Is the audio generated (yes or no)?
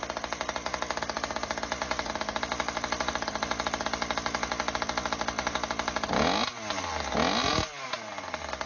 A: no